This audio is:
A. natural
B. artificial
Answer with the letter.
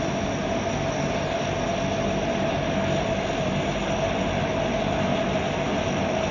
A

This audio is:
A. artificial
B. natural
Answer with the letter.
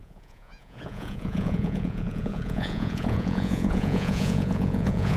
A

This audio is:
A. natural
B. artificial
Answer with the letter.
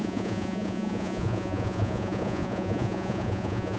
B